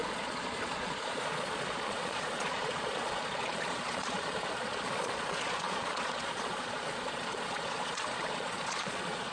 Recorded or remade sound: remade